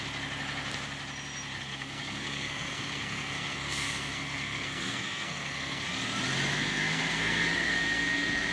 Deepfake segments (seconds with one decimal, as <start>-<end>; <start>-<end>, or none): 1.7-5.8; 6.5-8.5